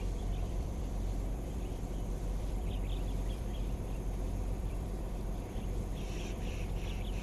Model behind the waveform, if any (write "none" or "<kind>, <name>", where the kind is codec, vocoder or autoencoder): vocoder, BigVGAN v2